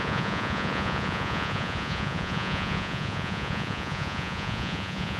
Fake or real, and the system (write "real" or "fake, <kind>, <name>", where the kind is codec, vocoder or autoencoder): fake, vocoder, Vocos